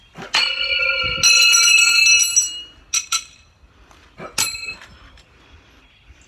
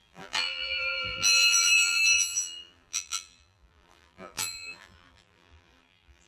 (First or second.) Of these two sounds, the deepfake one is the second